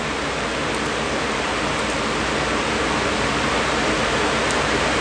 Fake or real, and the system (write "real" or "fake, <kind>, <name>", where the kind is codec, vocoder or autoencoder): fake, vocoder, BigVGAN v2